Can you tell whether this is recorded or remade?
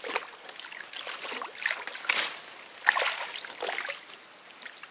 recorded